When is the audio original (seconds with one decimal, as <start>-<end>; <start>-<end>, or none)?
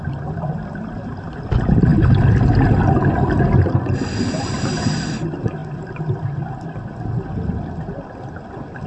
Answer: 0.0-8.9